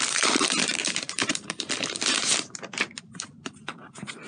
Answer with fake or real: fake